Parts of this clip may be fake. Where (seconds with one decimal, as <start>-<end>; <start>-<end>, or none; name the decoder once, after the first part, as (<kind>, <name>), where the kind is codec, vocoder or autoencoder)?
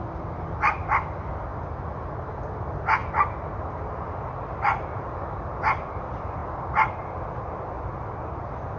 none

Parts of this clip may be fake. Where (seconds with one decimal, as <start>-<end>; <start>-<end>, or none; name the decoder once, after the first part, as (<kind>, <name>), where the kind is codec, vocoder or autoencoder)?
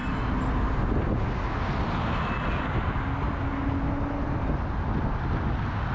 none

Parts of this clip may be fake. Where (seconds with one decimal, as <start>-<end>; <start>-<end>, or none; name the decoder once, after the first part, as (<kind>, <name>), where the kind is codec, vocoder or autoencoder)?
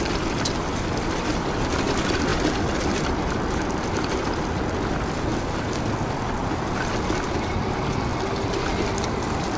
none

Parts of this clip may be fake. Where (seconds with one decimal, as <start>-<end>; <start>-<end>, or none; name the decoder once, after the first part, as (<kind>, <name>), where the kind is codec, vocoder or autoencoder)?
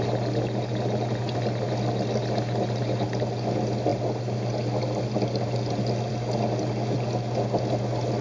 none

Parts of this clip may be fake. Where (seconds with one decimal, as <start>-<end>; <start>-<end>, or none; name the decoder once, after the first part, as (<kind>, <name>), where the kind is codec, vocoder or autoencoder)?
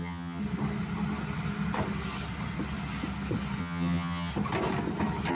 0.0-0.4 (vocoder, HiFi-GAN); 3.6-4.3